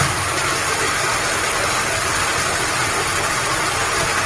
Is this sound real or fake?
real